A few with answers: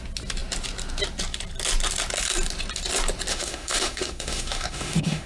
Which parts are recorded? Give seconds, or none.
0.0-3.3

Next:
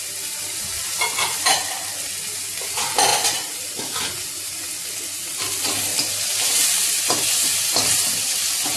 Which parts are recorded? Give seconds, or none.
0.0-8.8

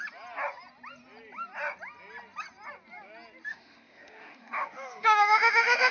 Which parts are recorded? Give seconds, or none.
0.0-3.5

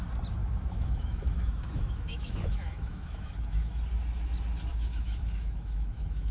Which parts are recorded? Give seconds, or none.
0.0-0.4; 3.8-4.7

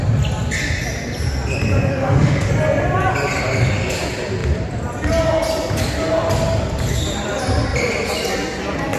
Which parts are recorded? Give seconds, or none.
0.0-1.9; 2.5-9.0

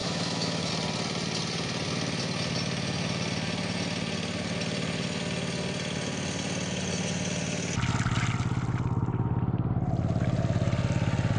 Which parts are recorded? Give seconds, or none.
0.7-11.4

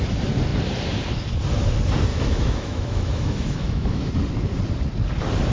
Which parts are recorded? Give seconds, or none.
0.0-2.1; 4.1-5.5

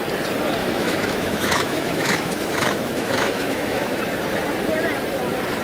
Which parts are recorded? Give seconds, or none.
0.0-0.6; 4.0-5.6